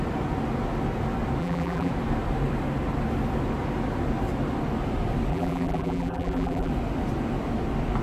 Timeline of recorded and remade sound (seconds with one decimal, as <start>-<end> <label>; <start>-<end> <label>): 0.0-1.4 recorded; 1.4-1.9 remade; 1.9-5.3 recorded; 5.3-6.7 remade; 6.7-8.0 recorded